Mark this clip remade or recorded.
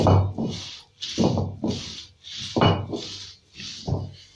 recorded